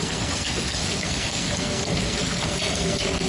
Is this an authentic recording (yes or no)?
no